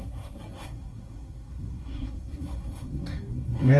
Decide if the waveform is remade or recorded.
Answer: remade